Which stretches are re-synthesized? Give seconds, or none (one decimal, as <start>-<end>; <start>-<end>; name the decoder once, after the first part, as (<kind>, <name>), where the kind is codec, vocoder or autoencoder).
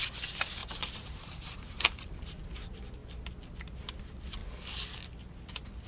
0.6-2.0 (vocoder, BigVGAN v2)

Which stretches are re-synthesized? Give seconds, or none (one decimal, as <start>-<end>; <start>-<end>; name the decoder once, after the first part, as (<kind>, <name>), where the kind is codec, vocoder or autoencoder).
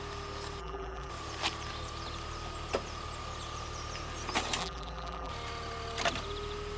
0.6-1.1 (vocoder, BigVGAN v2); 4.6-5.3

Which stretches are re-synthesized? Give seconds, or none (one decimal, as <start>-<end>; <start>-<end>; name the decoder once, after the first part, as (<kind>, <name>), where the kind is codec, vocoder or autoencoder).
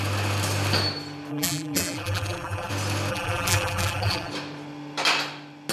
1.3-2.7 (vocoder, BigVGAN v2); 3.1-4.3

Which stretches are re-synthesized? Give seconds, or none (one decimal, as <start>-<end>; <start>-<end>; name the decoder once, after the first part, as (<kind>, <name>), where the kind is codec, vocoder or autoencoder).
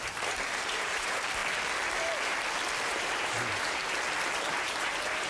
0.0-1.4 (vocoder, BigVGAN v2); 2.9-3.8; 4.5-5.3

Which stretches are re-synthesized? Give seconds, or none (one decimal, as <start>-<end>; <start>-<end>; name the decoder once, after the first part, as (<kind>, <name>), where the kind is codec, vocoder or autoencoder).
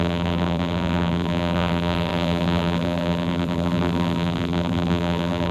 0.0-5.5 (vocoder, BigVGAN v2)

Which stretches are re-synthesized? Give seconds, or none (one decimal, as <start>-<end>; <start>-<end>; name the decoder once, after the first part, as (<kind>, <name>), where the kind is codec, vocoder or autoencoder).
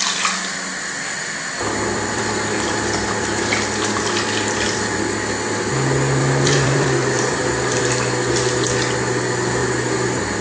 0.7-3.5 (vocoder, BigVGAN v2); 6.2-7.8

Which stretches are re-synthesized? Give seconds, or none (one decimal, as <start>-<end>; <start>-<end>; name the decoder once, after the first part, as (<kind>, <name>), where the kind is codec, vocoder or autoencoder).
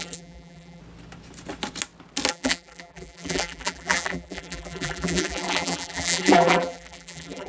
0.0-0.8 (vocoder, BigVGAN v2); 2.3-7.5